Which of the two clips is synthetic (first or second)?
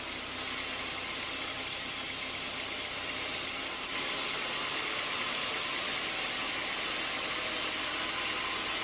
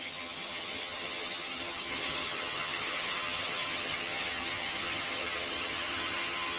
second